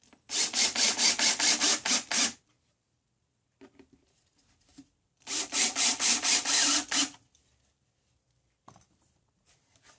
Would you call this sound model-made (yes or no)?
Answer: no